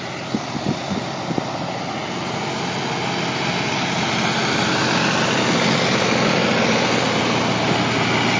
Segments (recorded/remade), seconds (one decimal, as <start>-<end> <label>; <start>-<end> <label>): 0.0-8.4 recorded